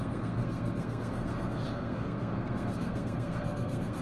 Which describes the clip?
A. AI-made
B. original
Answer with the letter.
A